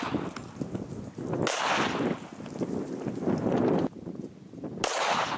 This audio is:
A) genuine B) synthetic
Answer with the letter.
A